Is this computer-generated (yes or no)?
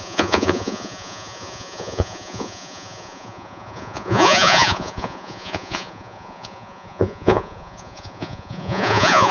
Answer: yes